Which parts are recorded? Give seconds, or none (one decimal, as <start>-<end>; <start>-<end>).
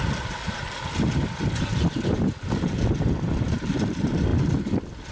0.0-5.1